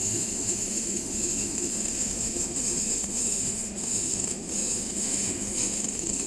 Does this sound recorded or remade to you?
remade